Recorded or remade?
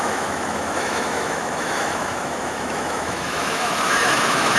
remade